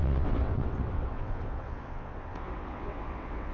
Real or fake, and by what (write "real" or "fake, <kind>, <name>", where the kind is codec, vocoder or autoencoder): fake, vocoder, WaveNeXt